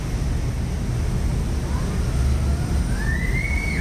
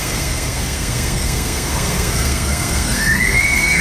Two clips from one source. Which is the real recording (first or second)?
first